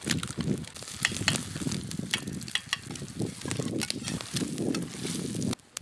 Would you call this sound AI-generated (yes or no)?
no